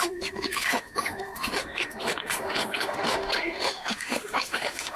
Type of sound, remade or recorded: remade